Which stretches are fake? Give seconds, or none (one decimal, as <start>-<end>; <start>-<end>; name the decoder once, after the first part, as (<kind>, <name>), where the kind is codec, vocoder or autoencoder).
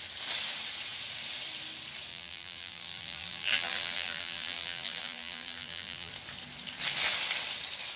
2.1-6.1 (vocoder, BigVGAN v2)